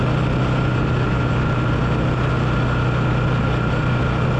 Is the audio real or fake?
real